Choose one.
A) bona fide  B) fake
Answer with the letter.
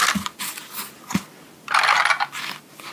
A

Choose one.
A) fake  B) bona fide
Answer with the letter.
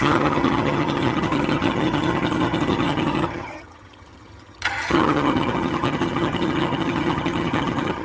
A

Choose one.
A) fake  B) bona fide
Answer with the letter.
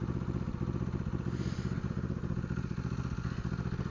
B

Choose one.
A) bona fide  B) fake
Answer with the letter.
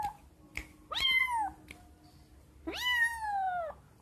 A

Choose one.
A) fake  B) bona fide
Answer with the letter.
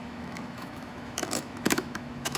A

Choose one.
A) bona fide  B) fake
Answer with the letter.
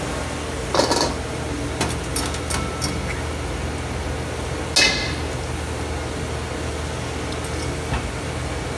A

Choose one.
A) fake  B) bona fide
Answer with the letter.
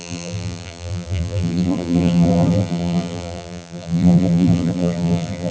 A